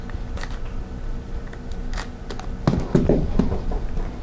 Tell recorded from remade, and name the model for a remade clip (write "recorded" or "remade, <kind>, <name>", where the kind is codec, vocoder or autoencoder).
recorded